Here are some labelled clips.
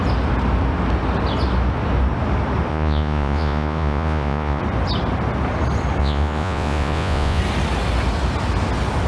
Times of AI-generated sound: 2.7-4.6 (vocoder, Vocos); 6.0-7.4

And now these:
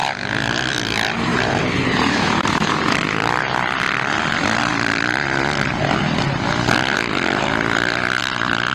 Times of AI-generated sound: 1.3-2.8 (vocoder, BigVGAN v2)